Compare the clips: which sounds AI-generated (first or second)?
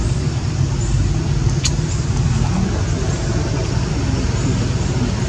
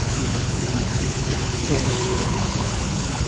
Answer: second